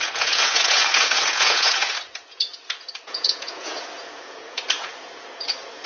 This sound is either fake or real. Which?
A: fake